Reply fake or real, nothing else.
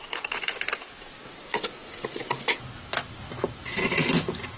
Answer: real